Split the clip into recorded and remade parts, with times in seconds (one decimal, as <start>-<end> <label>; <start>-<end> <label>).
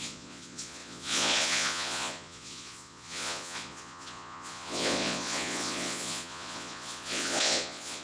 0.0-8.0 remade